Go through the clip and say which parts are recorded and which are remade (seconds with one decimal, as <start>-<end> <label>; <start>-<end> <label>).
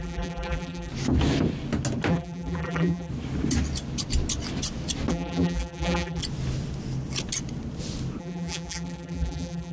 0.0-0.9 remade; 0.9-2.1 recorded; 2.1-3.1 remade; 3.1-5.1 recorded; 5.1-6.2 remade; 6.2-8.2 recorded; 8.2-9.7 remade